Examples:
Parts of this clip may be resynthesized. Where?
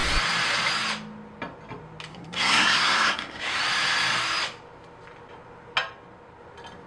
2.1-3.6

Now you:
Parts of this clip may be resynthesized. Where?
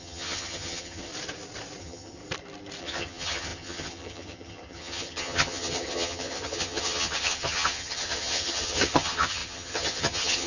0.0-1.1; 1.8-2.2; 2.8-10.5